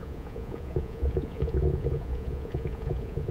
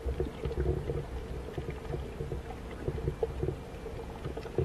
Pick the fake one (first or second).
first